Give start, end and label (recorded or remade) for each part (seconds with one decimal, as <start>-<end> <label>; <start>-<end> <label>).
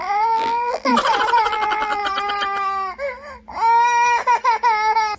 0.0-0.9 remade; 0.9-1.5 recorded; 1.5-2.0 remade; 2.0-5.2 recorded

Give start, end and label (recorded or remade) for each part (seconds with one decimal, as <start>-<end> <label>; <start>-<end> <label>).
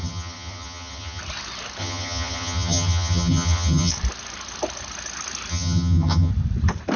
0.0-1.2 remade; 1.2-1.8 recorded; 1.8-3.9 remade; 3.9-5.5 recorded; 5.5-6.3 remade; 6.3-7.0 recorded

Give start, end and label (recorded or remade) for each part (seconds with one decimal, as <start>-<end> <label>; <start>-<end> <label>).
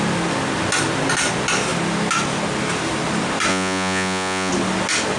0.0-3.5 recorded; 3.5-4.5 remade; 4.5-5.2 recorded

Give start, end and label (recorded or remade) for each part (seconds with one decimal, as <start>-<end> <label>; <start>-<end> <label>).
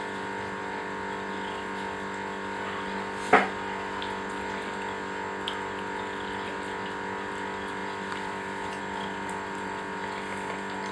0.0-7.8 recorded; 7.8-8.8 remade; 8.8-10.9 recorded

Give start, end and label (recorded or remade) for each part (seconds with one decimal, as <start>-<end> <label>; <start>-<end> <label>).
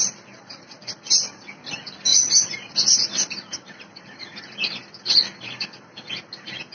0.0-6.7 recorded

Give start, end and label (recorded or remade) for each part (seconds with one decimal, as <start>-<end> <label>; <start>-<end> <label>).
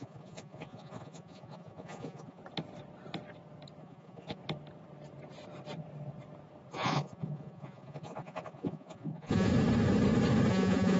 0.0-2.4 remade; 2.4-3.8 recorded; 3.8-4.4 remade; 4.4-6.7 recorded; 6.7-9.5 remade; 9.5-10.5 recorded; 10.5-11.0 remade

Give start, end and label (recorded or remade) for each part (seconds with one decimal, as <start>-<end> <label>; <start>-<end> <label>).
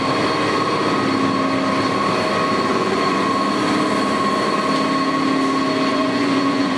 0.0-2.7 recorded; 2.7-3.3 remade; 3.3-5.9 recorded; 5.9-6.8 remade